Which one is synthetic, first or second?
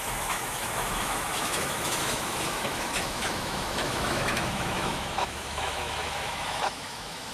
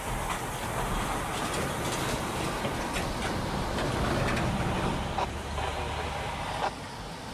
first